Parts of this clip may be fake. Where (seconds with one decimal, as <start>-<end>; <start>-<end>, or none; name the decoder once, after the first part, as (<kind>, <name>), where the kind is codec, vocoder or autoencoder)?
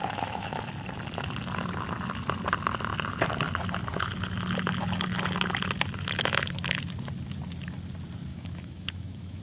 0.0-0.7 (autoencoder, DAC-VAE); 8.3-9.4